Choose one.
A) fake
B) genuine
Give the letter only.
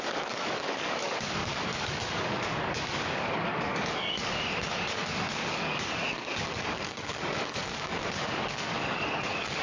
A